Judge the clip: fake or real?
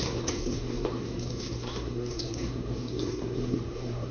fake